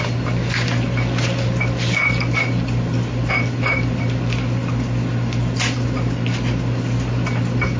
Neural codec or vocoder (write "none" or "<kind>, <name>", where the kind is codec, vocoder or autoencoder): vocoder, BigVGAN v2